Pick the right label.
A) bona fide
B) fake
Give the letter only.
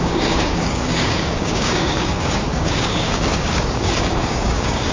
B